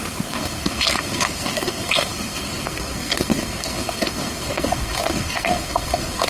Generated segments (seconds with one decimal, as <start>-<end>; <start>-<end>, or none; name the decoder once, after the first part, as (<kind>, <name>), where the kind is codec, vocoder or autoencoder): 0.0-6.3 (codec, SNAC)